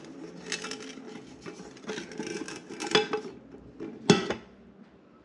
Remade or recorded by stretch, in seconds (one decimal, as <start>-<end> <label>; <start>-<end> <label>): 0.0-5.2 recorded